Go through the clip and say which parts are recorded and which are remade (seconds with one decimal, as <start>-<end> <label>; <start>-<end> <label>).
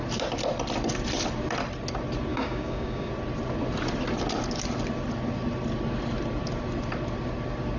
0.0-2.3 recorded; 2.3-3.1 remade; 3.1-7.8 recorded